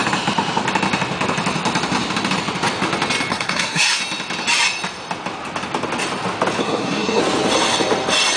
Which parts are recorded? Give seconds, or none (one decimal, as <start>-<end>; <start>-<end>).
0.0-3.3; 4.0-6.6; 7.2-8.4